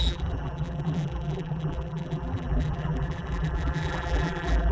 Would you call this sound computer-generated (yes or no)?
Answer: yes